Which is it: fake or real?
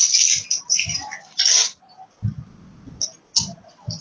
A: real